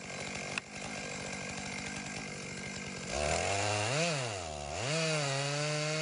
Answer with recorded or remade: recorded